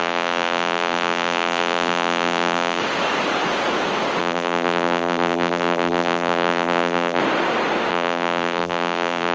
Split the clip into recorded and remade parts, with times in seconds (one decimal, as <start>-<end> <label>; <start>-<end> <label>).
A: 0.0-2.8 remade; 2.8-4.2 recorded; 4.2-7.2 remade; 7.2-7.9 recorded; 7.9-9.3 remade